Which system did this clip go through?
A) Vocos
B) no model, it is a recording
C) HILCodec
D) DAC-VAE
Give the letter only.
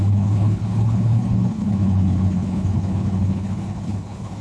C